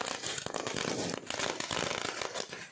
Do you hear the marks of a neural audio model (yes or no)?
no